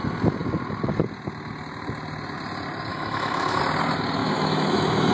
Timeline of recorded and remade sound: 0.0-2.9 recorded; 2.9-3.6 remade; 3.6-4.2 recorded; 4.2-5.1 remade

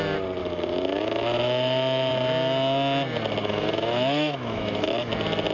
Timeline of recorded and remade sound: 0.0-0.4 recorded; 0.4-2.1 remade; 2.1-3.4 recorded; 3.4-5.1 remade; 5.1-5.5 recorded

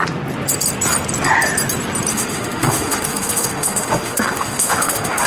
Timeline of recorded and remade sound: 0.0-2.1 recorded; 2.1-5.3 remade